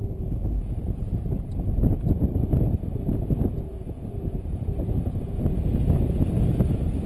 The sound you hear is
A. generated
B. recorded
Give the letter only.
A